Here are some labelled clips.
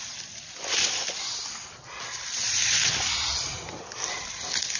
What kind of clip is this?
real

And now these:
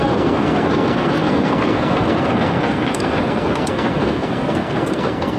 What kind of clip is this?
fake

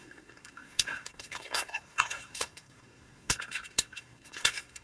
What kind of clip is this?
fake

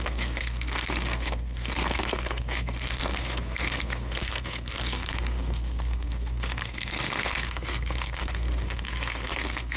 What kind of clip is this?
fake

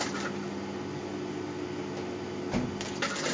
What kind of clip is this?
real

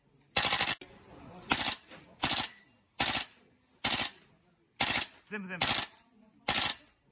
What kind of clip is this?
real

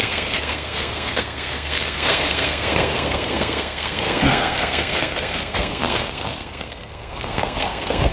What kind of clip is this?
fake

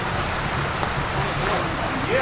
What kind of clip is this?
real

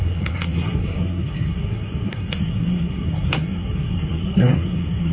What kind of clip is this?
fake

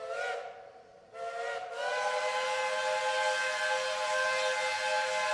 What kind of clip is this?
real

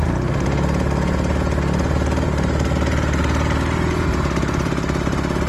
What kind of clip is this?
real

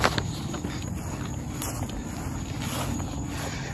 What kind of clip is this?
real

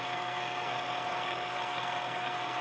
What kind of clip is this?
fake